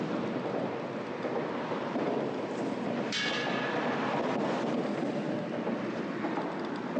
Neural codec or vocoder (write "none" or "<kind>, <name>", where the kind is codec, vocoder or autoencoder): none